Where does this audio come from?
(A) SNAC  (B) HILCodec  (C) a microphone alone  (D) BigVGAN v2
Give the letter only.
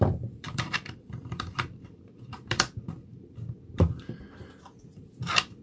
D